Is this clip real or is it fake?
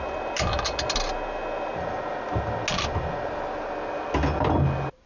real